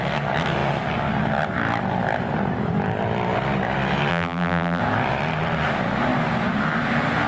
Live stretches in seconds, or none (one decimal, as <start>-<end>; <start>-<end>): 0.0-4.1; 4.8-7.3